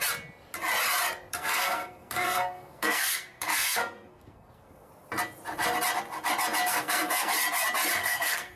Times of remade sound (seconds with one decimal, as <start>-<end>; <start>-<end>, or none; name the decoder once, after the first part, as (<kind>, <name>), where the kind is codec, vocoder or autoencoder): 1.3-4.9 (codec, SNAC); 6.7-7.3; 8.0-8.6